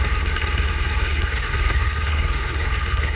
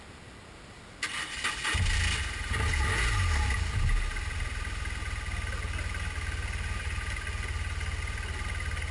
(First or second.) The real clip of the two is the second